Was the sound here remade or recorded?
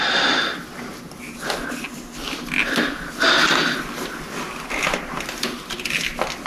recorded